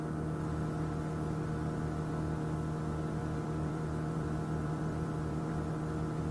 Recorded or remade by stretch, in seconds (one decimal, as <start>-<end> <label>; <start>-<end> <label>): 0.0-3.2 recorded; 3.2-5.7 remade; 5.7-6.3 recorded